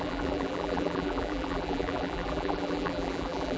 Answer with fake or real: fake